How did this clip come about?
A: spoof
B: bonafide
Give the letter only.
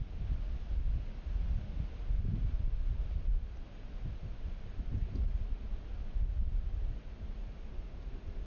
B